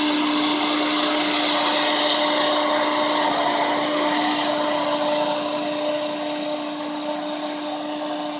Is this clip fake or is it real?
real